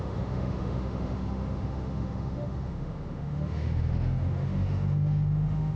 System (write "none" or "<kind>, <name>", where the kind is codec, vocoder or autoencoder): autoencoder, DAC-VAE